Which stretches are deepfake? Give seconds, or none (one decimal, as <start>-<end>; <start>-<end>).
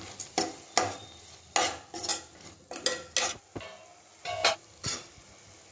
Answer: none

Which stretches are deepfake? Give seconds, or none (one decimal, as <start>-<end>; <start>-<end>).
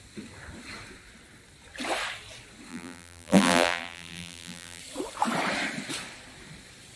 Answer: 2.7-4.8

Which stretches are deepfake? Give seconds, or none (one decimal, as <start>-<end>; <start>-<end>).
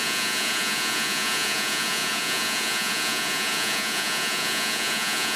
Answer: 0.0-5.4